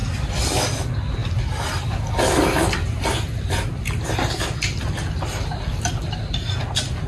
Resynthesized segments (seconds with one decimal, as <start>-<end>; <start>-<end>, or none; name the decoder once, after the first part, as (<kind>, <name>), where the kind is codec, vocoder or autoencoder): none